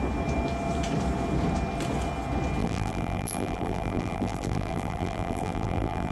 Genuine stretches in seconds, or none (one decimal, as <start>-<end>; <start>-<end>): 0.0-2.6